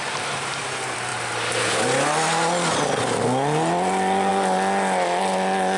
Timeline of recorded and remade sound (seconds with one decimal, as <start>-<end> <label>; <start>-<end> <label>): 0.0-0.6 remade; 0.6-5.8 recorded